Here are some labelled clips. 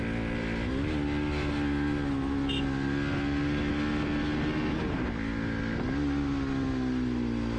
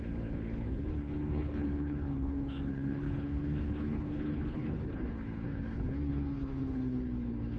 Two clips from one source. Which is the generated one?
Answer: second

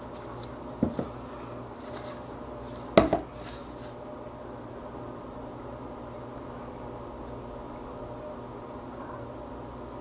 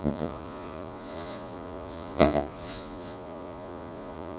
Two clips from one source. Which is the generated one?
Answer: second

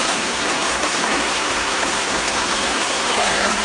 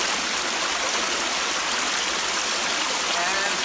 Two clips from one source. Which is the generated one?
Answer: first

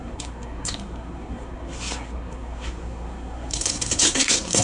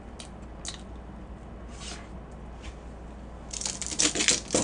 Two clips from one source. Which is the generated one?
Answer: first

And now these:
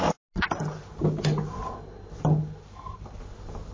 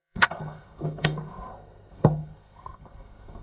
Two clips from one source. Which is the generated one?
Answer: second